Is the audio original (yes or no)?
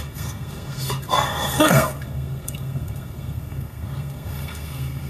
no